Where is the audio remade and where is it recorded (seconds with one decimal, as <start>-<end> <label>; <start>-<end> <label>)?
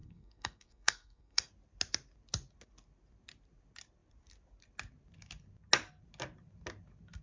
0.0-1.5 remade; 1.5-7.2 recorded